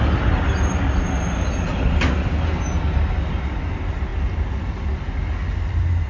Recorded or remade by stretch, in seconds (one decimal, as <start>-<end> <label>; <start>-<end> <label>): 0.0-6.1 recorded